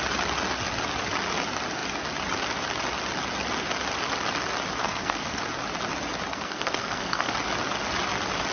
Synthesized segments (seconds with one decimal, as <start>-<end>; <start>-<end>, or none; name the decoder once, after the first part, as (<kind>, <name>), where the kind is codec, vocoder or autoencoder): 4.8-5.4 (codec, SNAC); 6.3-7.3